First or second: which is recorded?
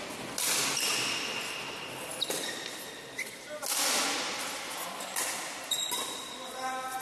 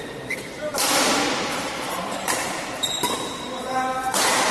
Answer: first